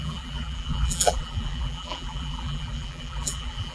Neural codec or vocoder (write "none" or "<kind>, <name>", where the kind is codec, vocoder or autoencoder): vocoder, BigVGAN v2